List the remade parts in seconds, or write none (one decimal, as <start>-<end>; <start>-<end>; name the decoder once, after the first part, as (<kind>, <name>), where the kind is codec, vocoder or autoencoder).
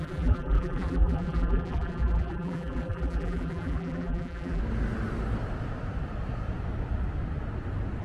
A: 0.0-4.6 (vocoder, BigVGAN v2)